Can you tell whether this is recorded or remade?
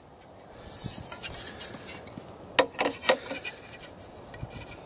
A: recorded